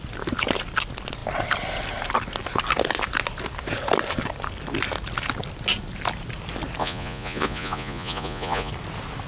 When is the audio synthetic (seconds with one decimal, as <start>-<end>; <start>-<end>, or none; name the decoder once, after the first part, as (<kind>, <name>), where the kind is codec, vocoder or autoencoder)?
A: 6.8-8.7 (vocoder, Vocos)